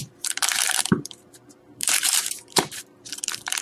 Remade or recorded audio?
remade